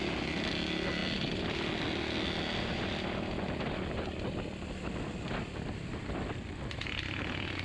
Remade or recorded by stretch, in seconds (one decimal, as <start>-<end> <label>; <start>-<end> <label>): 0.0-7.6 recorded